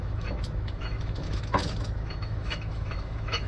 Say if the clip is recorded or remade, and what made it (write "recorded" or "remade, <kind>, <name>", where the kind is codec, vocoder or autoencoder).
remade, autoencoder, DAC-VAE